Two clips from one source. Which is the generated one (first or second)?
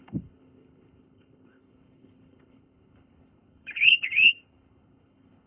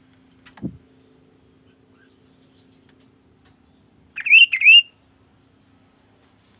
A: first